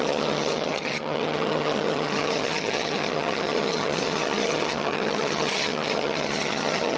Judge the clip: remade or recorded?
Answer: remade